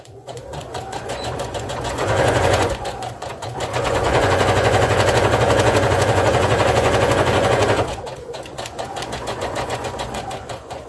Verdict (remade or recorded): remade